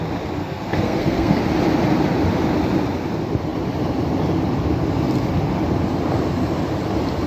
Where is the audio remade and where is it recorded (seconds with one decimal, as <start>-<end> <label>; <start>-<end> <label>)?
0.0-0.4 recorded; 0.4-1.4 remade; 1.4-7.3 recorded